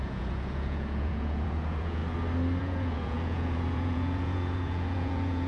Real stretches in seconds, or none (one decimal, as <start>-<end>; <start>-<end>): 2.0-2.6